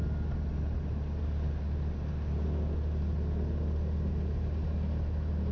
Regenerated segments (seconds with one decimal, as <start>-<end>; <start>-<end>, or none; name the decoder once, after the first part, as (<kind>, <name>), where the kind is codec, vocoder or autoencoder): none